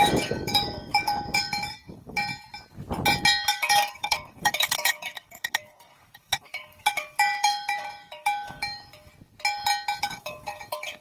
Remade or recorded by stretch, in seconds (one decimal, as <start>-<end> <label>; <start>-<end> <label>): 0.0-2.3 remade; 2.3-3.5 recorded; 3.5-9.1 remade; 9.1-10.0 recorded; 10.0-11.0 remade